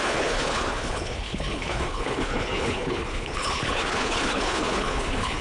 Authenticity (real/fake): fake